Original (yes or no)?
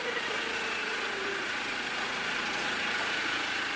no